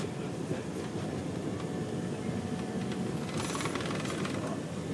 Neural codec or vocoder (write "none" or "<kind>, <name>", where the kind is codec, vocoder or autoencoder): none